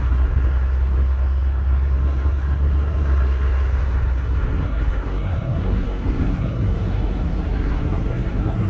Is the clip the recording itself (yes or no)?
no